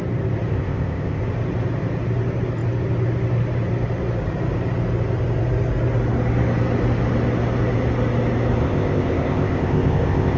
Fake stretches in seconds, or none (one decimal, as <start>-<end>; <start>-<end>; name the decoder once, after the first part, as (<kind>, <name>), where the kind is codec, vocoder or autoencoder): 0.5-1.2 (codec, ZipCodec); 8.6-10.4

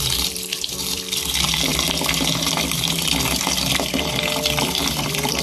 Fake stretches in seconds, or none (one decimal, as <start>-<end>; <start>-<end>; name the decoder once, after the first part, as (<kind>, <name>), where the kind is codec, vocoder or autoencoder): 0.0-1.7 (vocoder, BigVGAN v2); 4.9-5.4

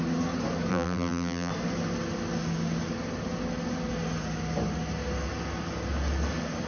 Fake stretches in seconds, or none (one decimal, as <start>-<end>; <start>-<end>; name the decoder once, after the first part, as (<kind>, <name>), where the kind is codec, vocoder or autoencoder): 0.7-1.5 (vocoder, BigVGAN v2)

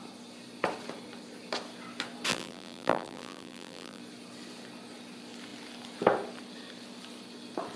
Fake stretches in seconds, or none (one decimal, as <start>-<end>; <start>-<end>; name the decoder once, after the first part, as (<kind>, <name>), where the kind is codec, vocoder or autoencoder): 2.3-4.0 (vocoder, BigVGAN v2)